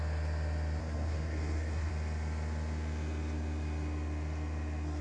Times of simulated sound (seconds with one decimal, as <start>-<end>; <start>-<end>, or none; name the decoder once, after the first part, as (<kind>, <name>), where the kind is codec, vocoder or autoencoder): 0.8-1.9 (codec, SNAC)